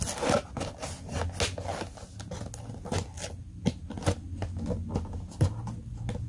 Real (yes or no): yes